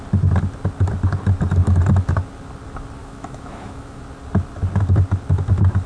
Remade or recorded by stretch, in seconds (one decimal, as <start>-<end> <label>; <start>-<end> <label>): 0.0-3.0 recorded; 3.0-4.0 remade; 4.0-5.9 recorded